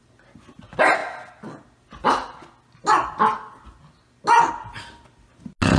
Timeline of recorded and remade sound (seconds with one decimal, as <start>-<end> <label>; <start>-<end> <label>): 0.0-5.8 recorded

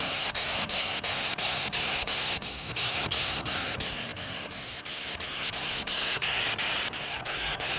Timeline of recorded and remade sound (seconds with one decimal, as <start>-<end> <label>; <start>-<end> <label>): 0.0-6.4 remade; 6.4-7.0 recorded; 7.0-7.8 remade